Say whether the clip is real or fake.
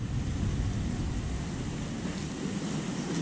real